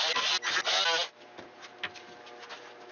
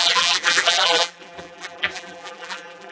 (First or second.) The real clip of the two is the first